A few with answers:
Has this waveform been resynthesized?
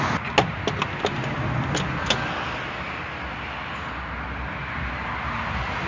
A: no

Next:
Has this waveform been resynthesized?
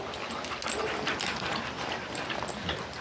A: no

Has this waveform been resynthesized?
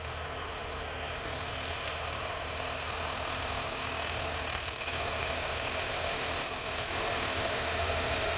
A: yes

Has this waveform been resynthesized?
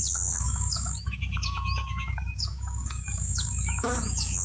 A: yes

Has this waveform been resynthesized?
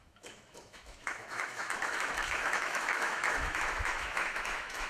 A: yes